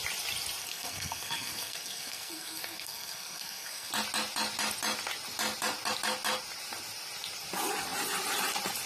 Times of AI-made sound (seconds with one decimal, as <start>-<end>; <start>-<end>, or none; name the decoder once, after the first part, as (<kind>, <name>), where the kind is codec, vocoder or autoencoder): 0.6-3.9 (codec, SNAC)

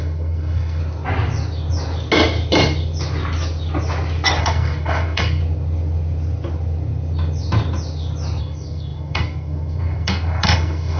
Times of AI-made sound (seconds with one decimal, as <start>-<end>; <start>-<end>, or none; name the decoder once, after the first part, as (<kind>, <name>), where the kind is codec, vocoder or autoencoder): 0.0-0.8 (codec, SNAC); 4.4-5.4; 8.4-11.0

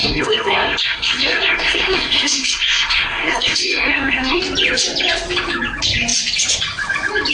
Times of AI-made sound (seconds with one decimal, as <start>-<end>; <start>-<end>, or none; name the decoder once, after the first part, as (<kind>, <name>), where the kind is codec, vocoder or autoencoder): 0.0-4.4 (codec, SNAC)

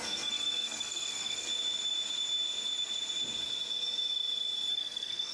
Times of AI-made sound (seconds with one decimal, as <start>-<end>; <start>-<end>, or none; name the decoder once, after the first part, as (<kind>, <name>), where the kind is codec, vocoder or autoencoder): 0.0-1.5 (codec, SNAC); 4.7-5.3

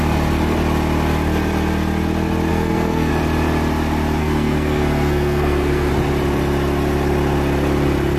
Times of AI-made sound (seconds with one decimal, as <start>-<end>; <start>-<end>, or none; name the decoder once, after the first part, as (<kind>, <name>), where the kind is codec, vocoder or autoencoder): 2.5-3.1 (codec, SNAC); 4.2-5.9

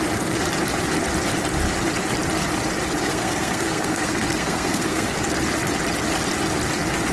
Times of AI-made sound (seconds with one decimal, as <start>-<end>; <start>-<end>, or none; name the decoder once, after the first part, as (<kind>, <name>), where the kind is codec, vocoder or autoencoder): 3.0-5.1 (codec, SNAC)

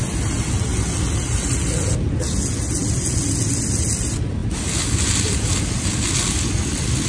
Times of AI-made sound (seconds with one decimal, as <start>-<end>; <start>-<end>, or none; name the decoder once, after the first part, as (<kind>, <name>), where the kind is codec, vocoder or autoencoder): none

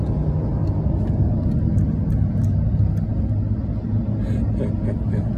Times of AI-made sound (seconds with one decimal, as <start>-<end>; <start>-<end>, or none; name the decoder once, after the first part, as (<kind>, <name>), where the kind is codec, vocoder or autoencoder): none